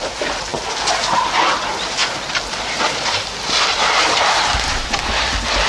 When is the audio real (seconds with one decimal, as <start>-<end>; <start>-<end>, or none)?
0.0-5.7